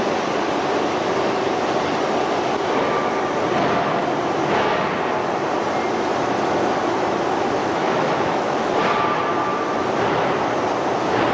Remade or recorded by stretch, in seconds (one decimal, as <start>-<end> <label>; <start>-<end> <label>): 0.0-7.6 recorded; 7.6-8.7 remade; 8.7-11.3 recorded